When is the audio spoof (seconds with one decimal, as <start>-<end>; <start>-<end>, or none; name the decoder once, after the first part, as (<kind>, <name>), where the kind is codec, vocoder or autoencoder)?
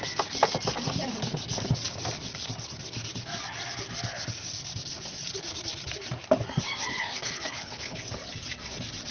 6.9-8.1 (codec, HILCodec)